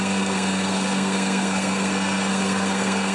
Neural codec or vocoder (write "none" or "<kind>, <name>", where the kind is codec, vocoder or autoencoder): codec, SNAC